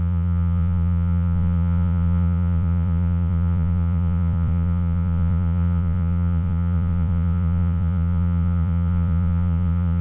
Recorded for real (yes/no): no